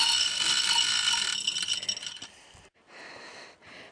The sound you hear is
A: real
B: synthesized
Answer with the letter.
A